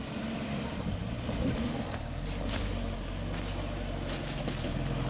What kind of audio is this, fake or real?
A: real